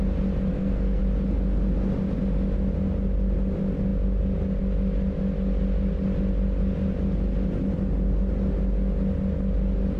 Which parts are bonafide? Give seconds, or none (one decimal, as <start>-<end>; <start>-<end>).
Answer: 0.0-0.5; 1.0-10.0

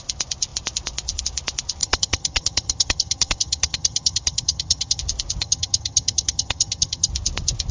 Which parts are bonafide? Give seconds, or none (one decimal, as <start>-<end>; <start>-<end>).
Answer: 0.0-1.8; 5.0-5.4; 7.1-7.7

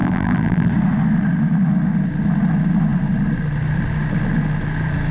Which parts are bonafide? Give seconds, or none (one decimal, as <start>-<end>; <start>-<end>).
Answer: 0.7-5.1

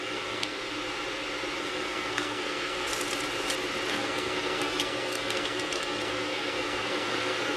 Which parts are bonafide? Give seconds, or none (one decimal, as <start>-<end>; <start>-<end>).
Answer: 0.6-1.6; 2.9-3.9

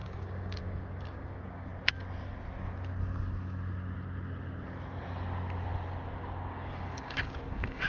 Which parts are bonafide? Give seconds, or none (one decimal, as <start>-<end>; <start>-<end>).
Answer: 1.7-6.4

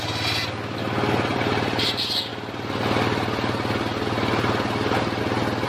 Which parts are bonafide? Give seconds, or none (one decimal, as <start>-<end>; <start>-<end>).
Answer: 0.0-1.3; 1.8-5.7

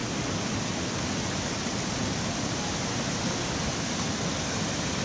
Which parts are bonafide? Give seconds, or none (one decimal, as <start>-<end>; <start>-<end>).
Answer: 0.0-5.0

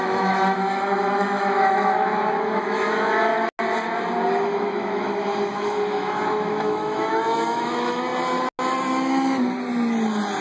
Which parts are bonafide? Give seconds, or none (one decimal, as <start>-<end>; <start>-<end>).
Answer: 3.3-4.3; 8.1-10.4